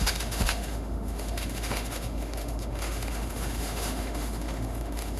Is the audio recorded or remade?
remade